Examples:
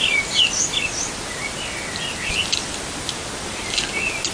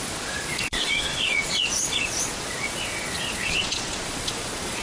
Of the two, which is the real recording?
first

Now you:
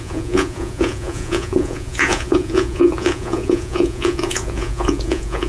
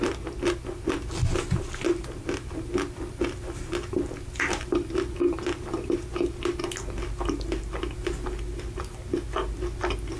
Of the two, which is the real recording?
second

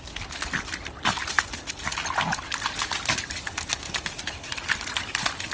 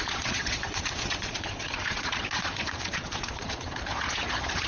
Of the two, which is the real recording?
first